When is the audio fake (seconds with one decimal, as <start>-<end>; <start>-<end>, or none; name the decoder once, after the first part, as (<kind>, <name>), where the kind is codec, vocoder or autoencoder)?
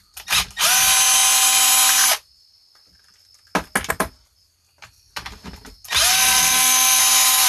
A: 6.1-7.0 (codec, SNAC)